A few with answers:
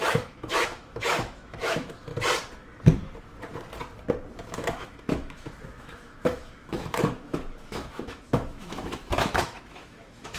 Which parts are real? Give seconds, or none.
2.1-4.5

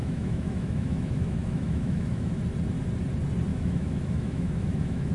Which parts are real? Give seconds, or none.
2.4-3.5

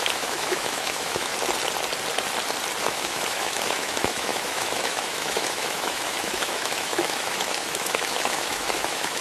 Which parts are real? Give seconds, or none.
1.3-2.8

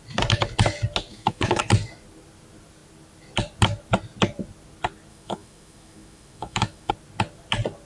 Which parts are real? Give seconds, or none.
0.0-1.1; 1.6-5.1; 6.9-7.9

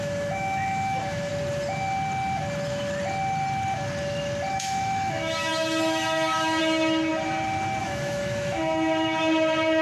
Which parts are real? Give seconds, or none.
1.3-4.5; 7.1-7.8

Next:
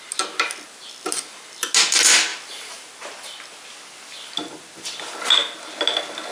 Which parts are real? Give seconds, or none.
0.0-6.3

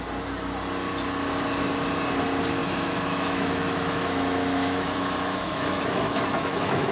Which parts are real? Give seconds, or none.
0.0-2.6

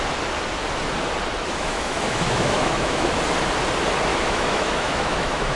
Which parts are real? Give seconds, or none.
0.0-1.4; 3.2-4.1